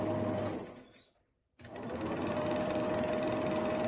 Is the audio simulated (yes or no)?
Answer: no